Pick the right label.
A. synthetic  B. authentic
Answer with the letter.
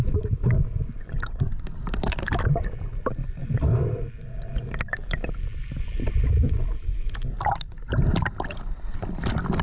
B